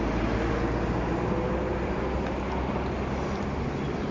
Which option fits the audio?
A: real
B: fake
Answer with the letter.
A